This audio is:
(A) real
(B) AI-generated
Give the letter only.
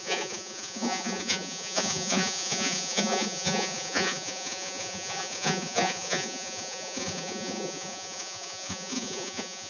B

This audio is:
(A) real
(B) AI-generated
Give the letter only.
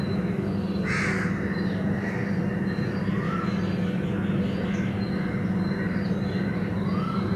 A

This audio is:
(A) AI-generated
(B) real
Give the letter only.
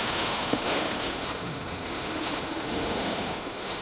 A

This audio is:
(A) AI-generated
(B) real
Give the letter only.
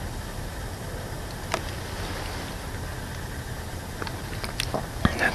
B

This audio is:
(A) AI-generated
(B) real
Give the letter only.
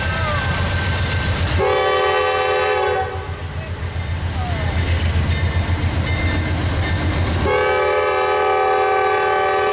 B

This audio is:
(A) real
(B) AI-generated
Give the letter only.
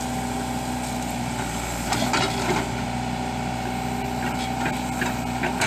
A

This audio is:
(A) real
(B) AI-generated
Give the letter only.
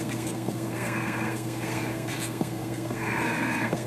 B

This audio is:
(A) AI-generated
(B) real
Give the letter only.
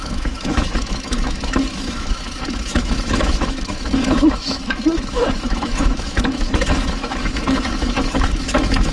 A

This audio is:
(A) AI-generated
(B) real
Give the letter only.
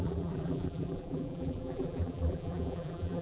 A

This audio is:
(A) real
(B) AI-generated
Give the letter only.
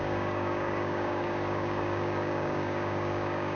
B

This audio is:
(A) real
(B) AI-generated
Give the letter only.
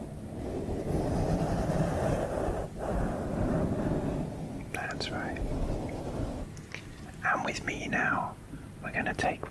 A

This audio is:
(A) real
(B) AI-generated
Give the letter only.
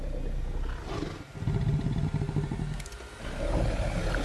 A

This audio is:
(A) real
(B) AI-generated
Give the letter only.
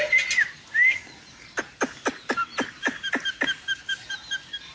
A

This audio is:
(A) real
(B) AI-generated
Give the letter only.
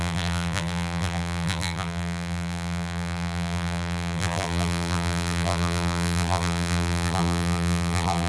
B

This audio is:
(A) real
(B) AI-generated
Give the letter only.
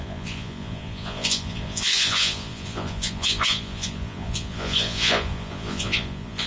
B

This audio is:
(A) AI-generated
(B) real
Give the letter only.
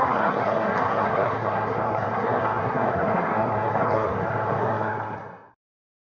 A